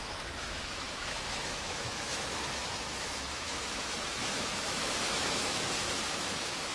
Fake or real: fake